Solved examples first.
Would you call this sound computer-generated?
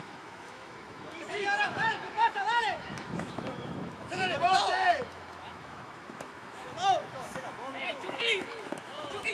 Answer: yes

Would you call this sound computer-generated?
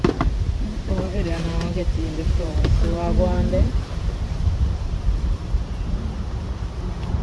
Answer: yes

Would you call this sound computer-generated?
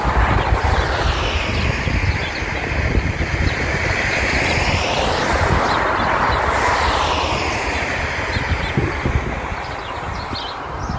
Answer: no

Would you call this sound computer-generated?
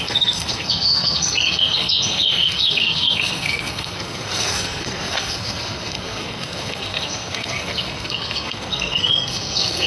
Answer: yes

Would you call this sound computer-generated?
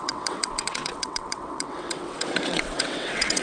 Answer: yes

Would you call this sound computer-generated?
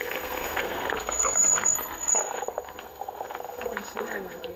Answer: yes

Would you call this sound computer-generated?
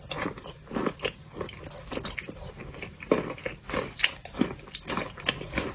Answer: no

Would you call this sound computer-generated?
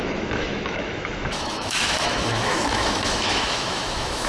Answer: yes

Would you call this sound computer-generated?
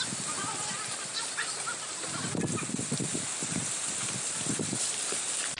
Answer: no